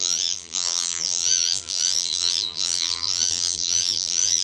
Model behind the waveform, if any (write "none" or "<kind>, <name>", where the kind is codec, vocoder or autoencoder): vocoder, BigVGAN v2